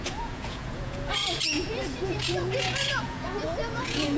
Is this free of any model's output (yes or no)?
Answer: no